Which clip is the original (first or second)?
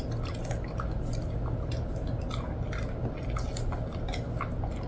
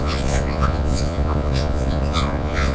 first